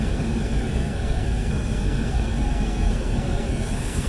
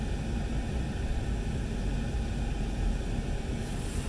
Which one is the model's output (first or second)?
first